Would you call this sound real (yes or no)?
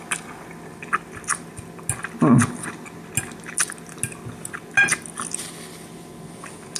yes